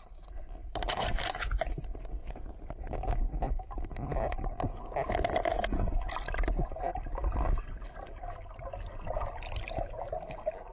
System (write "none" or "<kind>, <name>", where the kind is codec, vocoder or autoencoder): none